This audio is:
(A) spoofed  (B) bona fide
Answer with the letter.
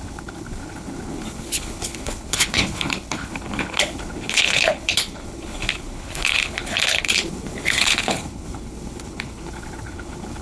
A